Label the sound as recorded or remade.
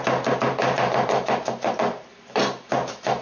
remade